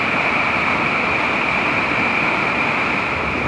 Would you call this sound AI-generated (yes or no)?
no